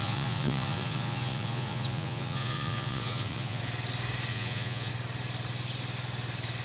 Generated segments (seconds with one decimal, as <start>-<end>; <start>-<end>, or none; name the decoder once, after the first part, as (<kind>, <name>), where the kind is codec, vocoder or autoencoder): 0.0-3.6 (vocoder, Vocos); 4.3-4.9